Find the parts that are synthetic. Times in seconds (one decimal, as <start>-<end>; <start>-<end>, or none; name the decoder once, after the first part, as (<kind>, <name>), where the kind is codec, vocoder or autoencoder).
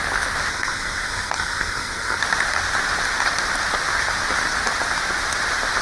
0.5-2.2 (codec, SNAC)